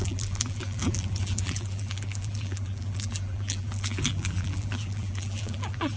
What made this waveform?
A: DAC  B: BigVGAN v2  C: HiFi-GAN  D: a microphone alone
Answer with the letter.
B